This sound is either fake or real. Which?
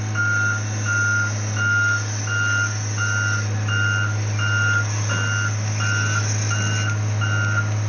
real